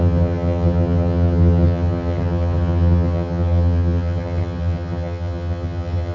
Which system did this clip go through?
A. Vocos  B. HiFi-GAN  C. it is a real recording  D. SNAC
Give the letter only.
B